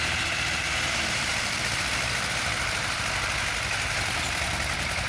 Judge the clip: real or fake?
real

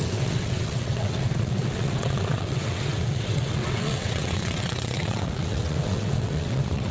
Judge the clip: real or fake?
fake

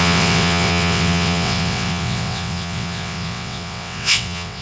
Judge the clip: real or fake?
fake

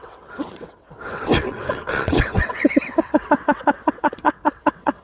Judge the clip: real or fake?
fake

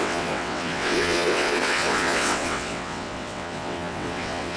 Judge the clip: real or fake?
fake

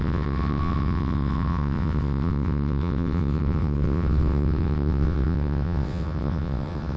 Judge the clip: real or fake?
fake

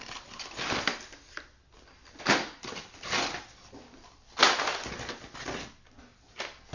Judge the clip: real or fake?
real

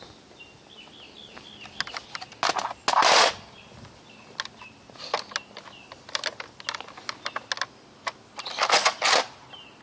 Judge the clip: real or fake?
real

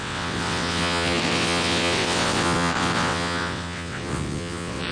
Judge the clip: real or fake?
fake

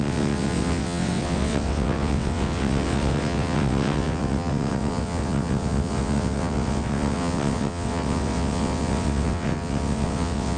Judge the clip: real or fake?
fake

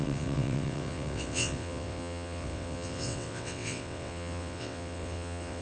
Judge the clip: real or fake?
fake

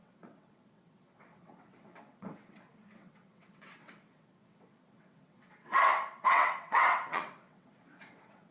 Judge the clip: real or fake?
fake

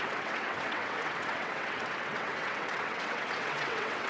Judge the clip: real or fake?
fake